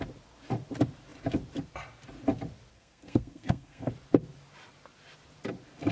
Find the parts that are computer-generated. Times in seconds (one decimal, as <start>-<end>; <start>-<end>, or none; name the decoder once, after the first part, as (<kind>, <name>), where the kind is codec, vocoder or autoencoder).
2.7-3.9 (codec, SNAC)